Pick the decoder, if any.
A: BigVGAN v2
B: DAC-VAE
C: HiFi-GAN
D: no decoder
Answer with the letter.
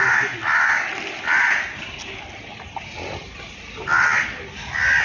D